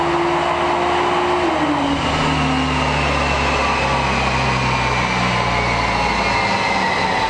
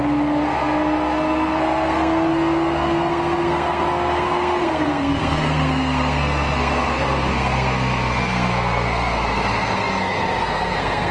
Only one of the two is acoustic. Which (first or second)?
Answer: first